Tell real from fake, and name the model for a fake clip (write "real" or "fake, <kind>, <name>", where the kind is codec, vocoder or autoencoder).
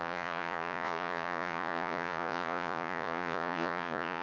fake, vocoder, Vocos